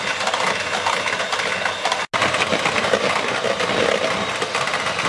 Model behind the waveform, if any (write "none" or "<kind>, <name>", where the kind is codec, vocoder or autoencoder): none